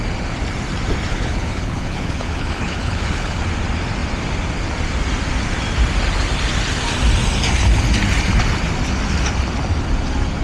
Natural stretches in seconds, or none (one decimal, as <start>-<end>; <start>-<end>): 0.0-1.1; 3.4-10.4